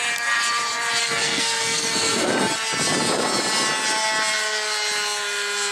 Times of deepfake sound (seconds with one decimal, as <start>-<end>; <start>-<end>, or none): 1.0-2.3